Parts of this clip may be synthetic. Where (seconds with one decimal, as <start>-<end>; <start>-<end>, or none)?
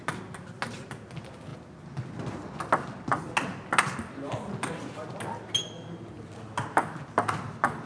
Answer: none